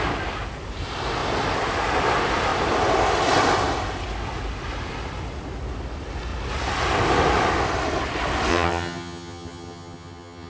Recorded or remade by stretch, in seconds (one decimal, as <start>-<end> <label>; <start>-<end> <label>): 0.0-8.5 recorded; 8.5-10.5 remade